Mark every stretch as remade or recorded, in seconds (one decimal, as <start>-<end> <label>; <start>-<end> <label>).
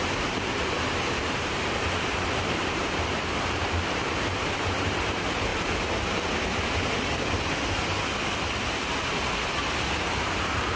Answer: 0.0-5.5 remade; 5.5-10.2 recorded; 10.2-10.8 remade